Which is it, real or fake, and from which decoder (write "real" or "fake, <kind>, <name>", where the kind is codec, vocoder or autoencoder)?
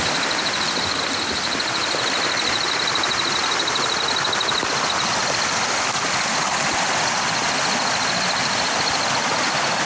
real